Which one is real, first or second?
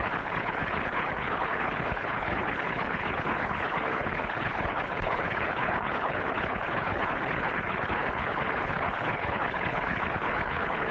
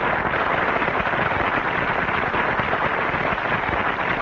second